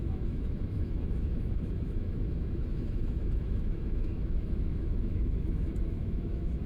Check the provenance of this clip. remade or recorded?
remade